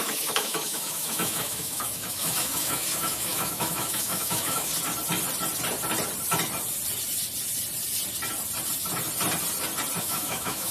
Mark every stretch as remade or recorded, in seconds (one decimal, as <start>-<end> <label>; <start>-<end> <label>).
0.0-4.7 remade; 4.7-10.0 recorded; 10.0-10.7 remade